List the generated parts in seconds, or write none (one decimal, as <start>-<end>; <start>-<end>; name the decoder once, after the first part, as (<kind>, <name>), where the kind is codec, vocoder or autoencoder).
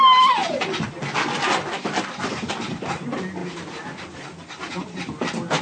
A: none